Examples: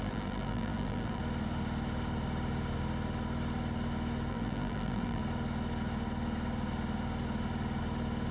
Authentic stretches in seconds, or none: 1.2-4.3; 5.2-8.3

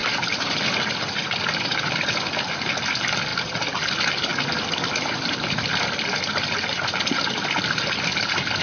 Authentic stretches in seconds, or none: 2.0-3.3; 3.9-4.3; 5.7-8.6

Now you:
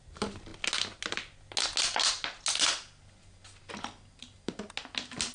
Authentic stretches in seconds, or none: 0.0-5.3

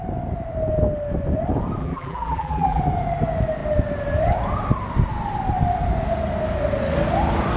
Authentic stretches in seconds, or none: 0.0-1.8; 2.8-7.6

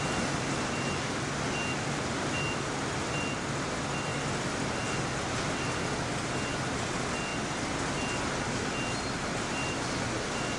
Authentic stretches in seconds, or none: 0.0-10.6